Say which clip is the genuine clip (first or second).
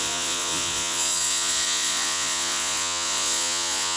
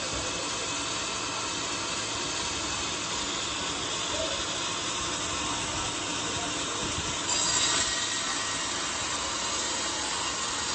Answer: second